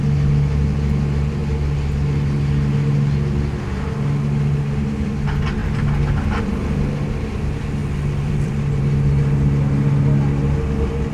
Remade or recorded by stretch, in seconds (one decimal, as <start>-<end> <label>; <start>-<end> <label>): 0.0-7.8 recorded; 7.8-8.8 remade; 8.8-11.1 recorded